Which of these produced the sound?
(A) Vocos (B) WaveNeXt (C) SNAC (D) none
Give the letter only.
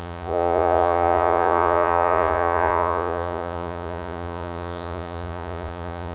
A